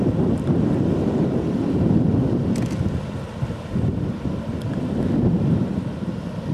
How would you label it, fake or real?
real